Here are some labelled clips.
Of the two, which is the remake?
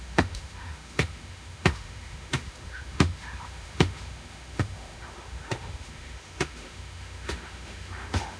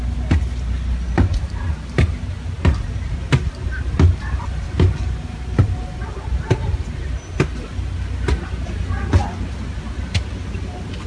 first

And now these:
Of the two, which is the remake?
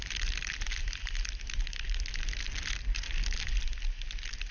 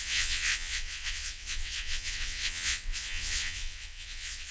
second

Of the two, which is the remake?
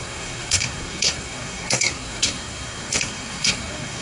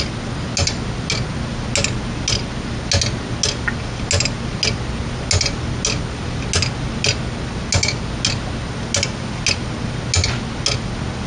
first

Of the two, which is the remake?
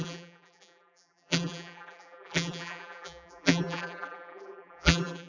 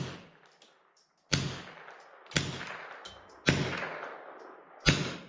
first